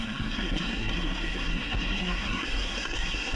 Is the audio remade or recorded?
remade